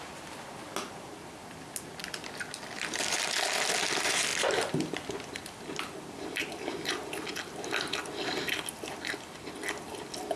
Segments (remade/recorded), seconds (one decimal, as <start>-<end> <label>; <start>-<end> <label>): 0.0-10.4 recorded